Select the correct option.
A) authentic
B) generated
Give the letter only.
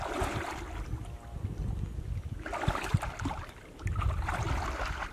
A